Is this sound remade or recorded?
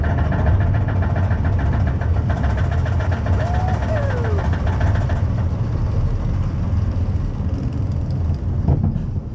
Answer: recorded